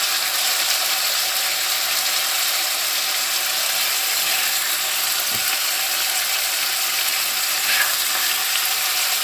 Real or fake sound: real